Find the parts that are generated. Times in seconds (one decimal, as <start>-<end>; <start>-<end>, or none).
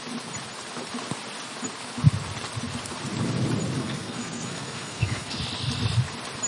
3.8-5.4